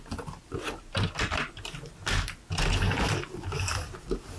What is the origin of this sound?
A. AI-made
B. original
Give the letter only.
B